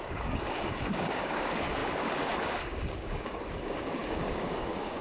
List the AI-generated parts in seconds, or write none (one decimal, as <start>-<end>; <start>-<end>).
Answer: 0.0-5.0